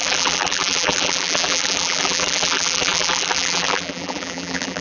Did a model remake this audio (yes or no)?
yes